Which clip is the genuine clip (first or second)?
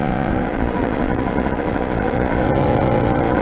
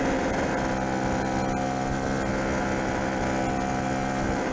second